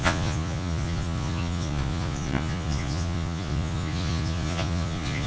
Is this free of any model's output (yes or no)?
no